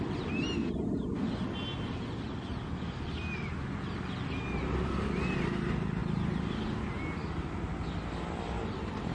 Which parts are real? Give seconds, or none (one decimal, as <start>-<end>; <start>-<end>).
0.0-9.1